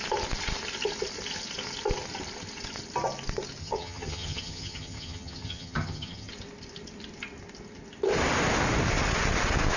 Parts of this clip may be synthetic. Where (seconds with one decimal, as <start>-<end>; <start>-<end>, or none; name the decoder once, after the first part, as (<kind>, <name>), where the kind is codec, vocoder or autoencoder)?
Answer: 3.6-6.3 (vocoder, HiFi-GAN)